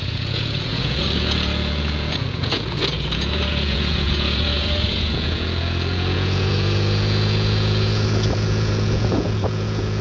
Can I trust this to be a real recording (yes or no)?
no